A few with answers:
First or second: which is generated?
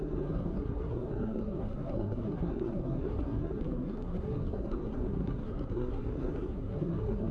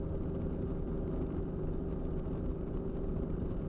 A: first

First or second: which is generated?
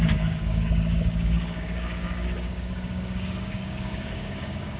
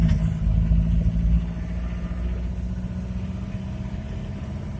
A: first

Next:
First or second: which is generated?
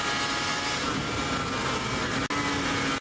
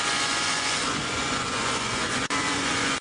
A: second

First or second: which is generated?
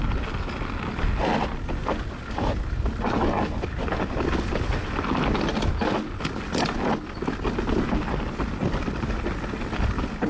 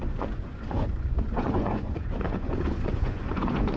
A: second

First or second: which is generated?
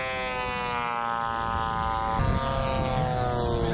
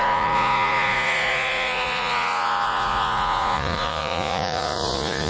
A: second